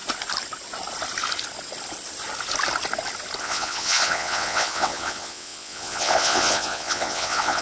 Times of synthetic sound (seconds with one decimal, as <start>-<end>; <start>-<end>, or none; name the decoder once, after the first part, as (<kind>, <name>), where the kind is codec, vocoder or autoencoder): 3.4-7.6 (vocoder, WaveNeXt)